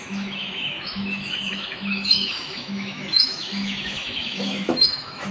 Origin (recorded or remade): remade